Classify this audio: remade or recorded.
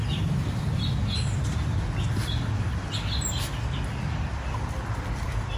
recorded